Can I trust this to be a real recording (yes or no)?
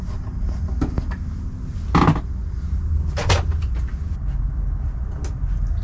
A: yes